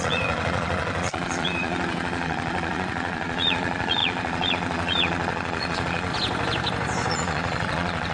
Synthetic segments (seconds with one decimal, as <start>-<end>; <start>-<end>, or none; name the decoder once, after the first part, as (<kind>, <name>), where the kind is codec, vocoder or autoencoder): 0.0-6.1 (vocoder, Vocos); 7.1-8.1